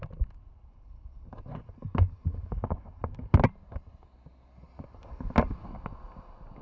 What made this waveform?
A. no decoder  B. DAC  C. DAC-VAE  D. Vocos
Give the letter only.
A